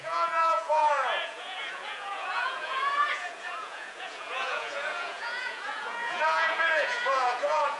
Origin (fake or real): fake